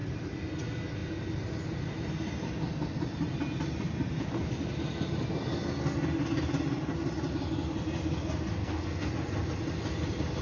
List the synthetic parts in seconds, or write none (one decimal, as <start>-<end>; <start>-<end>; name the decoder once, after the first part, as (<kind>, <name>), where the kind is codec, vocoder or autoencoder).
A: 8.6-9.1 (codec, SNAC)